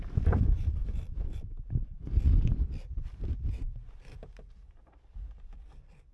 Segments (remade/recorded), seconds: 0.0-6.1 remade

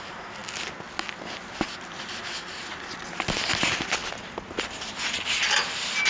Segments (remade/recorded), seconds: 0.0-6.1 recorded

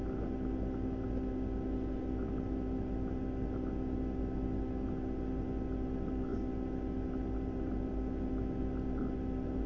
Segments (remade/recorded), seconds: 0.0-9.7 recorded

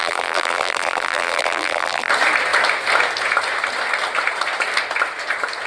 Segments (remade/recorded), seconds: 0.0-2.1 remade; 2.1-5.7 recorded

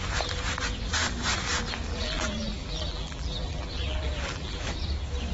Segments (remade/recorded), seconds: 0.0-1.9 recorded; 1.9-4.6 remade; 4.6-5.3 recorded

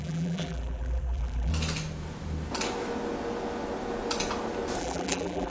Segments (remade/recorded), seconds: 0.0-1.5 remade; 1.5-4.8 recorded; 4.8-5.5 remade